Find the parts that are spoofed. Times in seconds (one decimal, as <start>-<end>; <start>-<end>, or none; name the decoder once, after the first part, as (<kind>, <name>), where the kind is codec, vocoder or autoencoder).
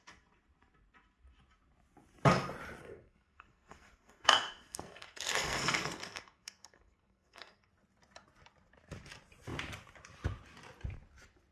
2.8-7.7 (codec, SNAC)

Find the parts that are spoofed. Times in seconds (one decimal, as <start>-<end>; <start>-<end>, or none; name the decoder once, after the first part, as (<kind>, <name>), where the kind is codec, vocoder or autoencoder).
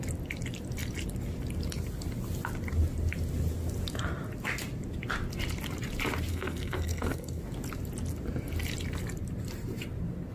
6.3-7.4 (codec, SNAC)